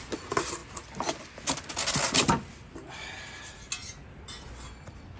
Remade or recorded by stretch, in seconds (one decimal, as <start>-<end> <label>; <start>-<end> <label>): 0.0-5.2 recorded